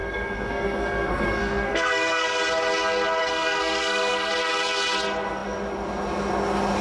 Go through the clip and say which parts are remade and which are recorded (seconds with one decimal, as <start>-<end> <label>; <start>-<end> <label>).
0.0-2.4 remade; 2.4-3.2 recorded; 3.2-4.3 remade; 4.3-6.8 recorded